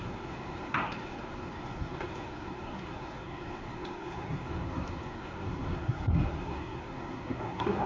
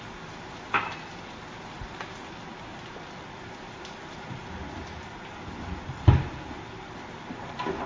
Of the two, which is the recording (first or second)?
second